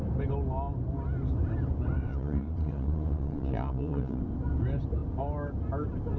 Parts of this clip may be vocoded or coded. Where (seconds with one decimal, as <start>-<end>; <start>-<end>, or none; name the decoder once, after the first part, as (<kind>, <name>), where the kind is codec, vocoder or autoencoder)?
2.1-4.2 (vocoder, Vocos)